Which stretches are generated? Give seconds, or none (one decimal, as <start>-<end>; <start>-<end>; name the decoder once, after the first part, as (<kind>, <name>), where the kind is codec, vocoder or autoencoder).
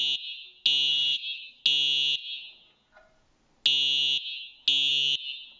0.9-1.6 (autoencoder, DAC-VAE)